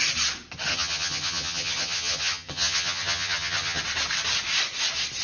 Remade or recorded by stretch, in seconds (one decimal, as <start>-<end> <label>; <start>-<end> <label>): 0.0-0.7 recorded; 0.7-3.8 remade; 3.8-5.2 recorded